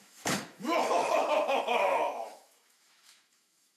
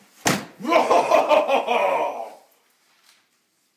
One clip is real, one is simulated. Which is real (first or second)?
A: second